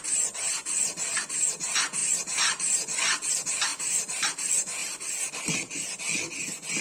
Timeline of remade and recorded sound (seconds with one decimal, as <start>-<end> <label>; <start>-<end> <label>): 0.0-6.8 recorded